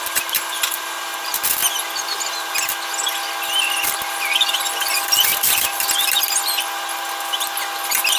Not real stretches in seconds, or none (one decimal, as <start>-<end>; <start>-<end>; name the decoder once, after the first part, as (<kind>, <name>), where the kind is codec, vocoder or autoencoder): none